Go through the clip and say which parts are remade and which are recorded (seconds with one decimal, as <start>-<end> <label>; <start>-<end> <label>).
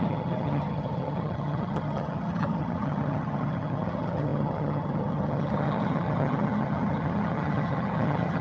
0.0-8.4 remade